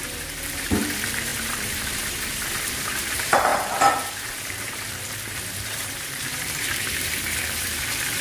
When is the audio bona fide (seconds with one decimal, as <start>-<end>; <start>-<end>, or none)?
none